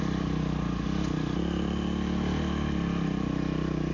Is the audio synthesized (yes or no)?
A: no